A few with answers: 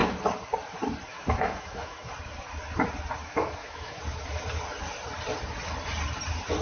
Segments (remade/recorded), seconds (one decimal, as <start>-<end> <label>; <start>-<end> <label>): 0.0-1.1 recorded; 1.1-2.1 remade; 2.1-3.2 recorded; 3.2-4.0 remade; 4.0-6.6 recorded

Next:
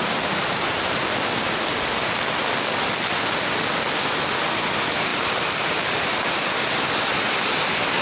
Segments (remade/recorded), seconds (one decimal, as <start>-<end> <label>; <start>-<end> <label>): 0.0-8.0 recorded

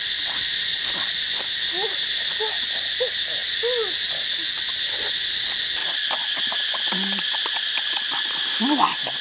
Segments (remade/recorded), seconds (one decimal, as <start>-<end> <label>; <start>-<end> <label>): 0.0-9.2 recorded

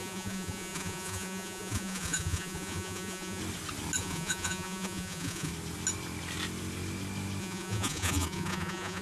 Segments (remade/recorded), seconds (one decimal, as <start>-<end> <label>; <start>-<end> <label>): 0.0-3.4 remade; 3.4-4.0 recorded; 4.0-5.5 remade; 5.5-7.4 recorded; 7.4-9.0 remade